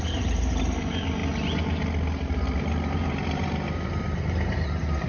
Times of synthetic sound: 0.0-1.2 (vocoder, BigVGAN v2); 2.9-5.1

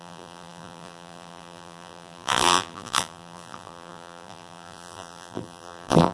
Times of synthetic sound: 0.0-6.1 (vocoder, BigVGAN v2)

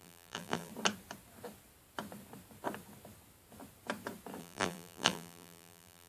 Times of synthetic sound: 0.0-0.7 (vocoder, BigVGAN v2); 4.4-6.1

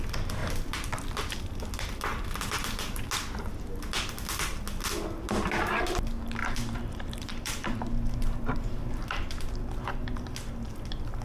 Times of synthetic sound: 2.1-3.0 (vocoder, BigVGAN v2); 6.4-8.8

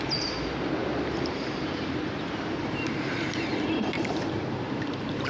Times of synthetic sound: 0.0-5.3 (vocoder, BigVGAN v2)

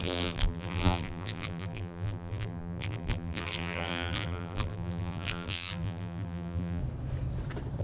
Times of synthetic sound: 0.0-6.8 (vocoder, BigVGAN v2)